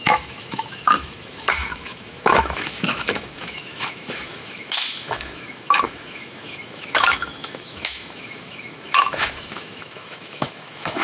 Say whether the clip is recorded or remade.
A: remade